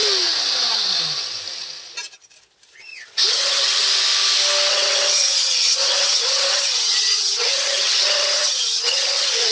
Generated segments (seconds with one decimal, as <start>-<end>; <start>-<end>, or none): 3.3-3.8; 4.7-9.5